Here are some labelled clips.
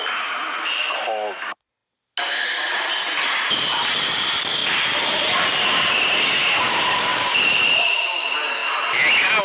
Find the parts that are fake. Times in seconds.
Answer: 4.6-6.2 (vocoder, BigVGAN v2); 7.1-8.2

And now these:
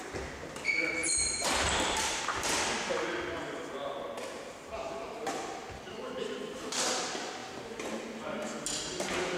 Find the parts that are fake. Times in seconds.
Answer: 1.0-2.2 (vocoder, BigVGAN v2)

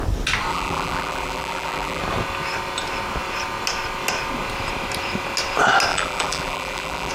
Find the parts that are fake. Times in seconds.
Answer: 0.5-2.0 (vocoder, BigVGAN v2); 5.9-7.1

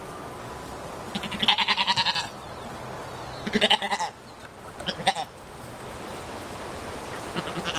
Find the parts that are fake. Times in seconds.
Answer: 1.5-3.1 (vocoder, BigVGAN v2)

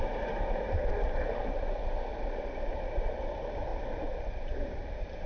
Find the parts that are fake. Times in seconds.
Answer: 0.0-3.7 (vocoder, BigVGAN v2); 4.3-5.3

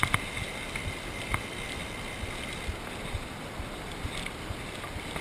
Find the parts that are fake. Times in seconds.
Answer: none